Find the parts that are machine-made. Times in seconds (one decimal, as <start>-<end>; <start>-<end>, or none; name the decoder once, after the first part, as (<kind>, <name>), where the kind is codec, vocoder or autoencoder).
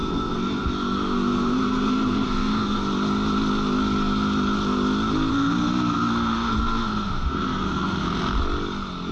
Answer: 0.0-2.8 (codec, SNAC); 5.3-8.4